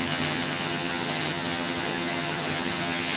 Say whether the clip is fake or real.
fake